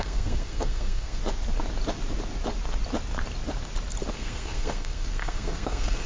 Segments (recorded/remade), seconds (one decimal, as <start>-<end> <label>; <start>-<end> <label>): 0.0-1.2 remade; 1.2-4.1 recorded; 4.1-6.1 remade